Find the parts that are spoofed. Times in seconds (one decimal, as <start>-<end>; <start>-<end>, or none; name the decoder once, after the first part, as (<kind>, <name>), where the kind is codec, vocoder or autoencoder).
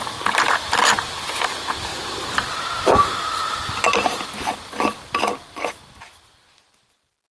1.9-4.5 (vocoder, BigVGAN v2)